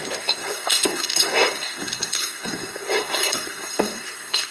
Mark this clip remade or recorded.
remade